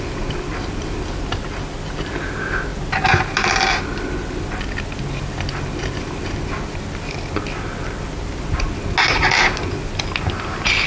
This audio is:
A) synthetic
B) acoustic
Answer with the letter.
B